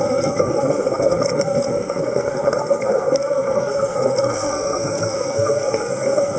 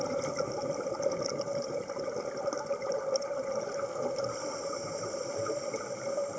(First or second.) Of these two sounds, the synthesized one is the first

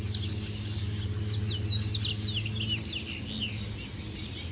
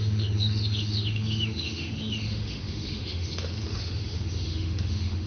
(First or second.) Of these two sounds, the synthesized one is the second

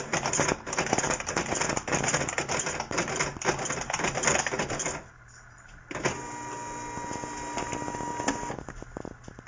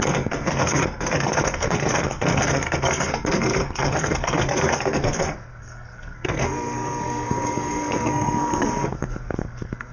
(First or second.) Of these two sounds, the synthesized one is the second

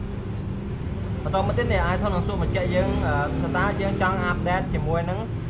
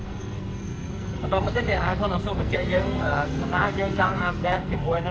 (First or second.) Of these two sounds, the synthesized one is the second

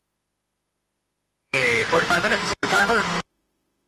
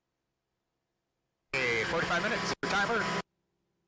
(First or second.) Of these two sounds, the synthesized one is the first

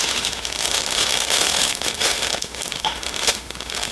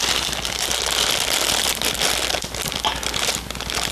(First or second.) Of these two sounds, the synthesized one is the first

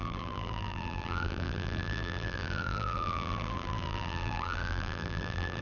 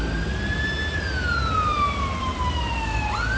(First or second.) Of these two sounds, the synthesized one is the first